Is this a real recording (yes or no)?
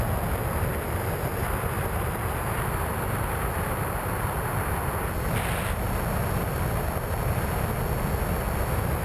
yes